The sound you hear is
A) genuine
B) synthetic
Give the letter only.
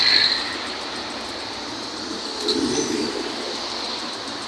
A